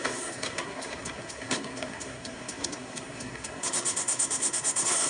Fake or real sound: fake